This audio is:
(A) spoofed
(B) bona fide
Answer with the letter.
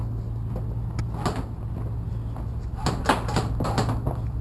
B